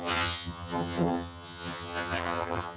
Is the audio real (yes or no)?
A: no